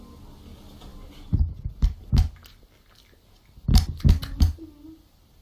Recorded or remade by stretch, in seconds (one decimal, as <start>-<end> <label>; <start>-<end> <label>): 0.0-5.4 recorded